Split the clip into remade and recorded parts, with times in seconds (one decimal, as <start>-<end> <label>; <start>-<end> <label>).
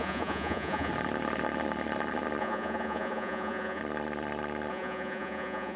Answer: 0.0-0.9 remade; 0.9-2.4 recorded; 2.4-3.8 remade; 3.8-4.7 recorded; 4.7-5.8 remade